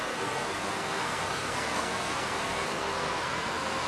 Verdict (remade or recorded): remade